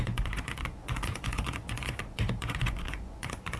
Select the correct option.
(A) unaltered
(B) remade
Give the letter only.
B